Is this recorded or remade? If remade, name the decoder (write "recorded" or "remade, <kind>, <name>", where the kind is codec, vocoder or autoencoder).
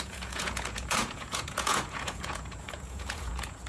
remade, vocoder, Vocos